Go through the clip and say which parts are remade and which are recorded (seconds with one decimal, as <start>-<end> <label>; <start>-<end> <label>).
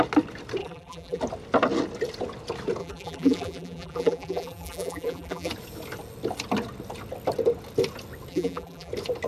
0.0-0.6 recorded; 0.6-1.2 remade; 1.2-2.8 recorded; 2.8-5.5 remade; 5.5-8.3 recorded; 8.3-8.9 remade; 8.9-9.3 recorded